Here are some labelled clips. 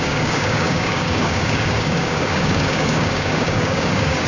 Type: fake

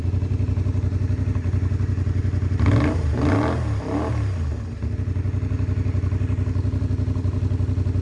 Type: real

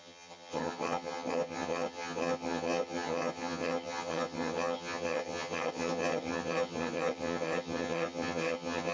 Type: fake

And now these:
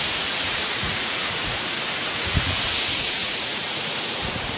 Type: fake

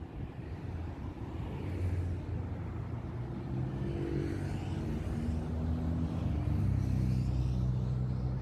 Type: real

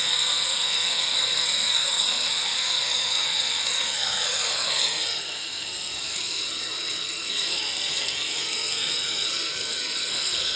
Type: fake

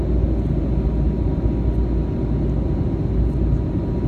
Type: real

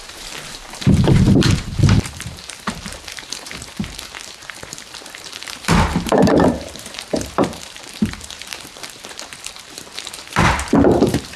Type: fake